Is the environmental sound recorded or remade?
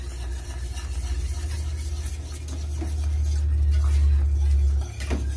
recorded